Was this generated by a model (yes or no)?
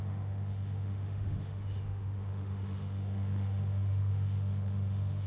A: yes